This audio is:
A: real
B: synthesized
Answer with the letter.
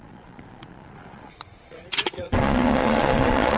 B